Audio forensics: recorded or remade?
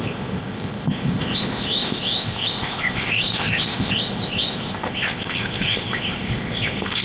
remade